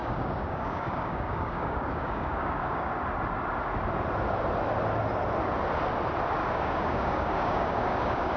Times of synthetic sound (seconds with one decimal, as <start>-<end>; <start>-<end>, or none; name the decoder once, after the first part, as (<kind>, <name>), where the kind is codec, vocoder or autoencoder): 0.0-2.9 (codec, DAC); 6.4-8.4